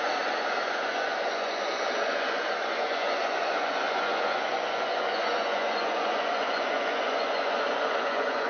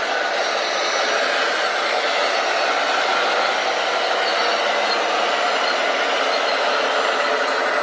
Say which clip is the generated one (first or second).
first